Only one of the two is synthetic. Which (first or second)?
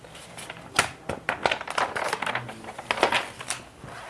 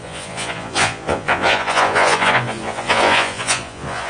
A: second